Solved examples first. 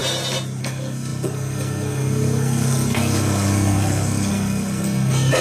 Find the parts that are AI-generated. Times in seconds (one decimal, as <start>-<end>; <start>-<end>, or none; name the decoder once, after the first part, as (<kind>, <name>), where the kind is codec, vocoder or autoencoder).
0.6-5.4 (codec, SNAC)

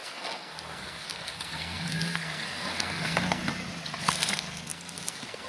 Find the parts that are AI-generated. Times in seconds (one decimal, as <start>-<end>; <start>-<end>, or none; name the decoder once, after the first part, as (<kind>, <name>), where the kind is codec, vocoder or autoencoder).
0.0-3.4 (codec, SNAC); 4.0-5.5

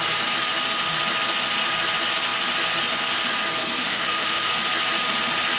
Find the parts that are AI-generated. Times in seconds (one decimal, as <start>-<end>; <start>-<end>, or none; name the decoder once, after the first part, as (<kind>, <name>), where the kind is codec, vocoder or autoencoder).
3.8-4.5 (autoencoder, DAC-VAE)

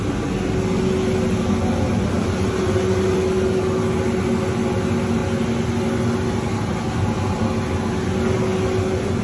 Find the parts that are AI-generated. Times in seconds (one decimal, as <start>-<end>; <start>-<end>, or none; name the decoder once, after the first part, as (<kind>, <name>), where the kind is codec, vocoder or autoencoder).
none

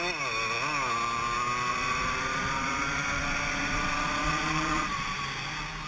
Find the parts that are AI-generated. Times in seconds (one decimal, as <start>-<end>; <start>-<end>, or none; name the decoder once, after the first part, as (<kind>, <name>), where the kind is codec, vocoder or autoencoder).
1.7-5.2 (vocoder, Vocos)